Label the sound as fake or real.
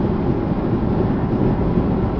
real